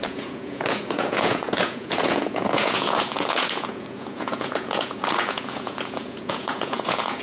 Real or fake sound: fake